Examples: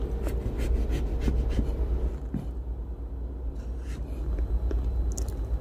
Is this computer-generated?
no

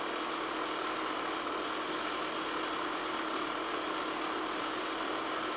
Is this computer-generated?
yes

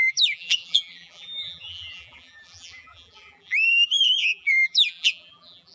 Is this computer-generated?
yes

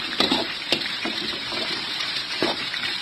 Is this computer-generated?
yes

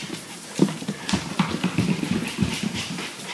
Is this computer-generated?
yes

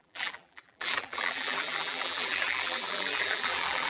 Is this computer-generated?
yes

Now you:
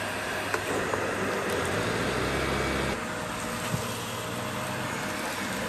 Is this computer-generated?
no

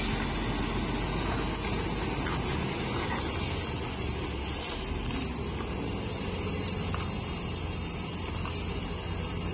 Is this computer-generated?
no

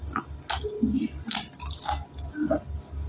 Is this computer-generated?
no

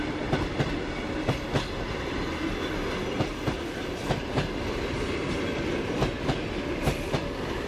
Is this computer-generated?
no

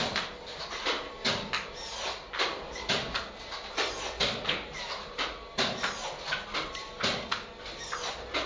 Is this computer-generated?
no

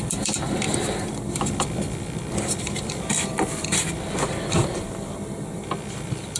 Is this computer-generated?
yes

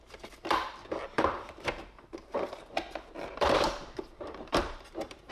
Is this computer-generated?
yes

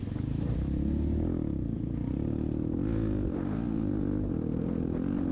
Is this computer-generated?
yes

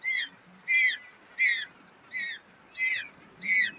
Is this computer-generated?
no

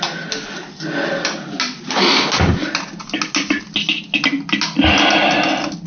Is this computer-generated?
no